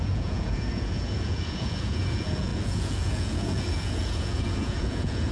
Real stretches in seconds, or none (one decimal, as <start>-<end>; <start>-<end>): none